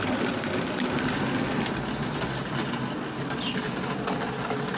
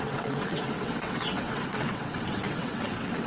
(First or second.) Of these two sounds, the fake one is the second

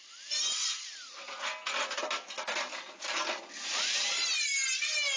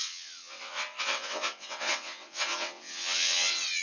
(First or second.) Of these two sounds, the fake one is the second